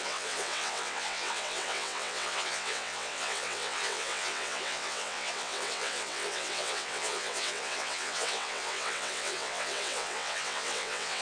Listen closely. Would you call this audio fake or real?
fake